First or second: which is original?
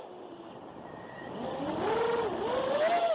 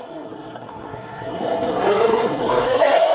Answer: first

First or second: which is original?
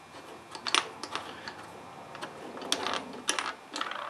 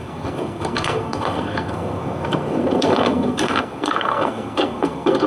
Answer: first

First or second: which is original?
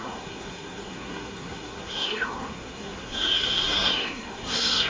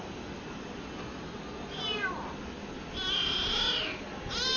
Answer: second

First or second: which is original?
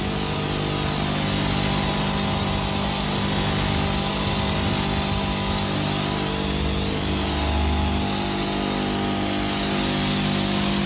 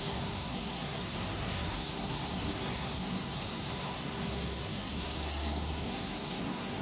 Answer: first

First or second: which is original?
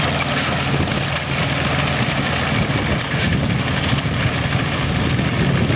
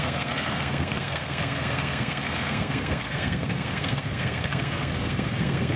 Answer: first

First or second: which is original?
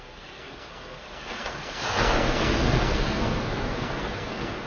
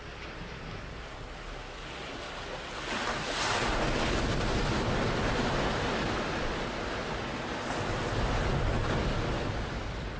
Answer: second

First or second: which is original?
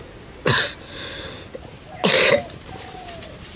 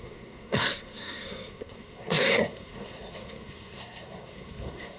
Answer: first